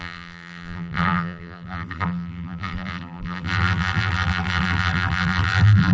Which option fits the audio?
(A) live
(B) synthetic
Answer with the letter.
B